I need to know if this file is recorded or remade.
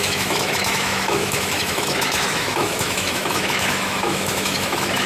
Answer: remade